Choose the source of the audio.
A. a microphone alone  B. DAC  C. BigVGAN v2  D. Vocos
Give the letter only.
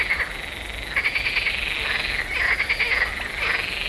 A